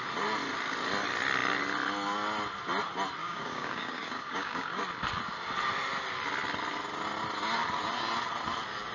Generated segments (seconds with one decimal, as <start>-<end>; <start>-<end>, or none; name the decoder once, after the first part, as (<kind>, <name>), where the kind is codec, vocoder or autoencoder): 3.2-4.8 (codec, DAC)